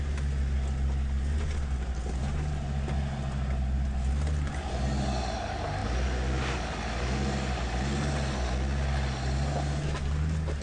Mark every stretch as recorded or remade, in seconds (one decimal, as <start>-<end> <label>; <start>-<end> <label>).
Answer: 0.0-10.6 recorded